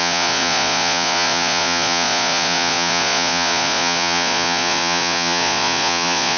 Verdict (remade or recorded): remade